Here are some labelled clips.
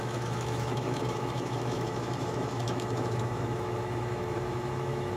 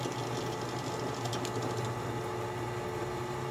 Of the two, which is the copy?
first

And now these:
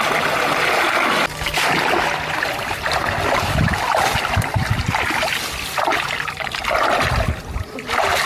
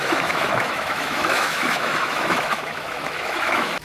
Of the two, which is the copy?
second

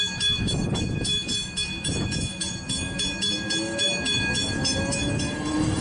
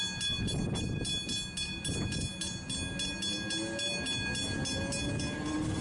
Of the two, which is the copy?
first